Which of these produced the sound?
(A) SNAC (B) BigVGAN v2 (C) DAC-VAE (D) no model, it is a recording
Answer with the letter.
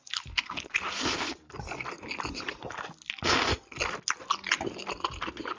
D